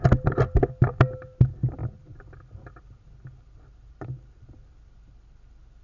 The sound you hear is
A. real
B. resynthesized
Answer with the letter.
A